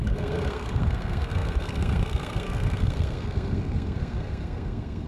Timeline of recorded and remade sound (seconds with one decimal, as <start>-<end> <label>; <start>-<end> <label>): 0.0-5.1 remade